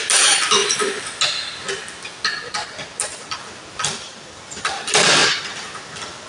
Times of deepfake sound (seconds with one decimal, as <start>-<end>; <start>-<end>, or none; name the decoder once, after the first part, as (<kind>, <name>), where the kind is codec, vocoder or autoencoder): none